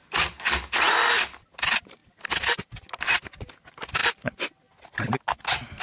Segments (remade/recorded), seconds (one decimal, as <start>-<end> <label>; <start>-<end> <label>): 0.0-2.0 recorded; 2.0-2.9 remade; 2.9-5.8 recorded